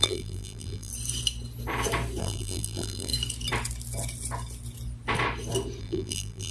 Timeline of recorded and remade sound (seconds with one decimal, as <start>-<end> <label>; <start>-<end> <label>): 0.0-0.9 remade; 0.9-2.2 recorded; 2.2-3.1 remade; 3.1-5.8 recorded; 5.8-6.5 remade